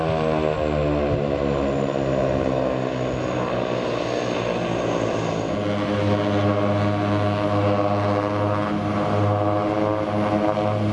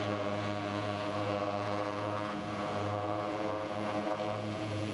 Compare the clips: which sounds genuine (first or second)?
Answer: first